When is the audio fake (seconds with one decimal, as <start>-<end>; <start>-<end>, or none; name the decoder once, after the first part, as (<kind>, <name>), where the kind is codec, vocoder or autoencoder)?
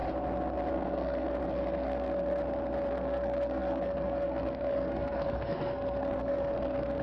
0.7-2.4 (codec, SNAC); 2.9-7.0